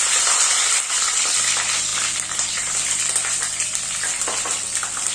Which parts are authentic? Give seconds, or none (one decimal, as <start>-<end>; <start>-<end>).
0.0-5.1